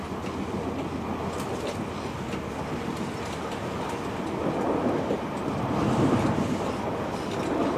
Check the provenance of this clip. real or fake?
real